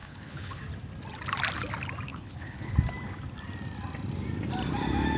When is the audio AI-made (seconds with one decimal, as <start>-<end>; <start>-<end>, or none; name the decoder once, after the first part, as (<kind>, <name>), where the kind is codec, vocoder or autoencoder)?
0.0-0.6 (codec, HILCodec); 2.1-2.7